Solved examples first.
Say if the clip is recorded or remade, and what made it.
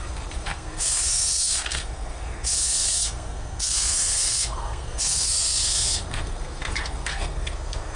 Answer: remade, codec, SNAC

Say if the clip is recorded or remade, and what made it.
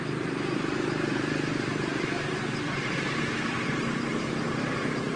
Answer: remade, vocoder, BigVGAN v2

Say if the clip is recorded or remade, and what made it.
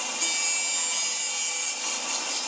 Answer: recorded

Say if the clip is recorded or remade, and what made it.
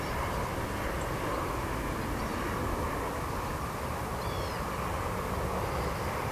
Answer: recorded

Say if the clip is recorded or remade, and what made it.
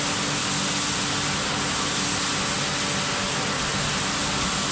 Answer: recorded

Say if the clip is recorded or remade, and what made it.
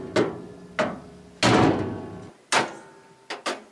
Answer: recorded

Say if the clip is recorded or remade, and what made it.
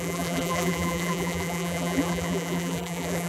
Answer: remade, vocoder, BigVGAN v2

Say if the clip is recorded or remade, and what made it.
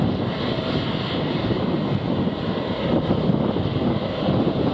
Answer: recorded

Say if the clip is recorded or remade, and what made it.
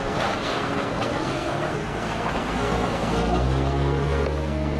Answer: remade, codec, SNAC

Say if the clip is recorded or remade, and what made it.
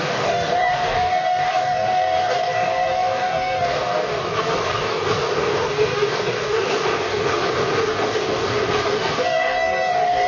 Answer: remade, codec, DAC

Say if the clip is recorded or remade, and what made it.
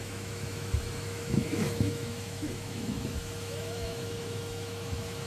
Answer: remade, autoencoder, DAC-VAE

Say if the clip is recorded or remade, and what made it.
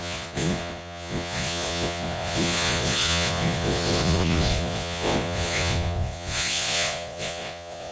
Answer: remade, vocoder, Vocos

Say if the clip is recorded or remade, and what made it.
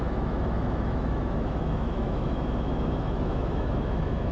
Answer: remade, autoencoder, DAC-VAE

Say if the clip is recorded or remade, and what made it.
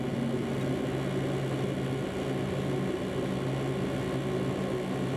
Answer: recorded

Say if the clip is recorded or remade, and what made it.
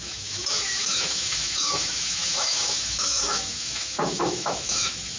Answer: remade, autoencoder, DAC-VAE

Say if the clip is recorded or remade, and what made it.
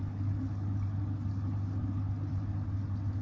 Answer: recorded